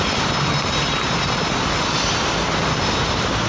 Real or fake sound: real